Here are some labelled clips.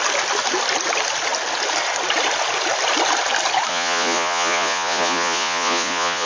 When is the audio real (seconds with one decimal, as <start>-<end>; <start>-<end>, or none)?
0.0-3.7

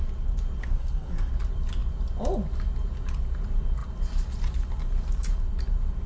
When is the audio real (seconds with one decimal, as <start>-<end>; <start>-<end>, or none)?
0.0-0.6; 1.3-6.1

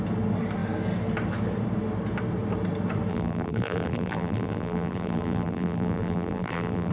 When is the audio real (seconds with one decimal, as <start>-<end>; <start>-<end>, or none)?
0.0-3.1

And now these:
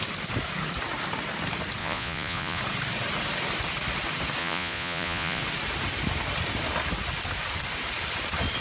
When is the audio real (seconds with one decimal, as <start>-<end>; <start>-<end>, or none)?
0.0-1.8; 2.6-4.4; 5.4-8.6